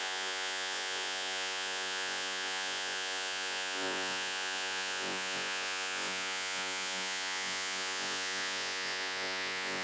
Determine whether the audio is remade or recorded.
remade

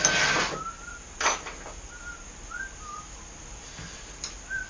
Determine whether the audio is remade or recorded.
recorded